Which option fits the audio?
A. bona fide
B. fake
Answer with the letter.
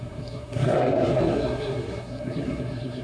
B